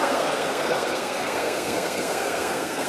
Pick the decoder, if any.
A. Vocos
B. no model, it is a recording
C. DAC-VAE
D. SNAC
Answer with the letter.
D